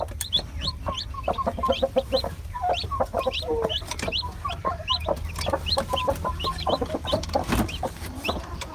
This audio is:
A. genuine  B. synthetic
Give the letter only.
A